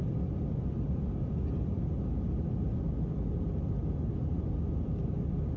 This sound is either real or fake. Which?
real